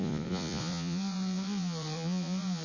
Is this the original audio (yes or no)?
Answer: no